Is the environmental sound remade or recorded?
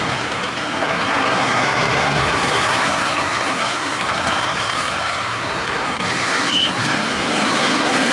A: remade